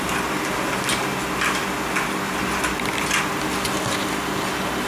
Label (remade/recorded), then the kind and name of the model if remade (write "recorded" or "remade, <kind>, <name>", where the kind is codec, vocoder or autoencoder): recorded